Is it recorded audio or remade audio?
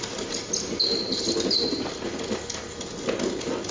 recorded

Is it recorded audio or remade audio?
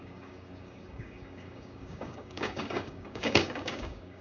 remade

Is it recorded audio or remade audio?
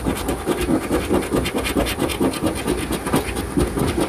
recorded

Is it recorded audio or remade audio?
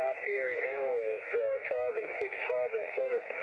remade